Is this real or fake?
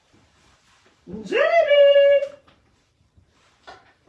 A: fake